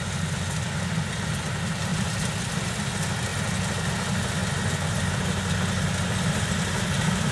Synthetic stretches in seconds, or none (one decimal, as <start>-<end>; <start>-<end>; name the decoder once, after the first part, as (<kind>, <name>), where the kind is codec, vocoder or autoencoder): none